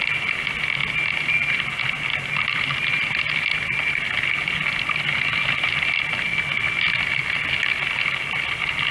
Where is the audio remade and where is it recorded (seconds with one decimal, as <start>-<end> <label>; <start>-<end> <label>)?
0.0-8.9 recorded